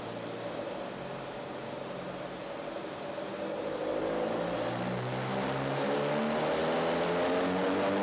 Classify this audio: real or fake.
real